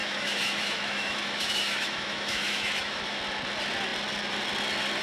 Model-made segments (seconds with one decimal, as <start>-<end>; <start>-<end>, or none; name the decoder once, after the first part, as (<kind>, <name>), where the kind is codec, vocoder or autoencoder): 0.0-3.0 (autoencoder, DAC-VAE)